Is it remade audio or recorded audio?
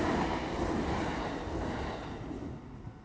recorded